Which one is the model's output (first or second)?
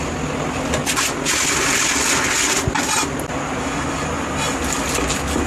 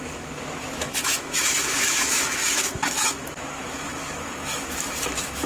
second